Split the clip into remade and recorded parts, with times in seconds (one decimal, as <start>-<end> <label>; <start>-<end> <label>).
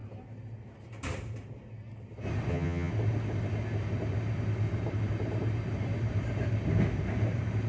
0.0-2.5 recorded; 2.5-2.9 remade; 2.9-7.7 recorded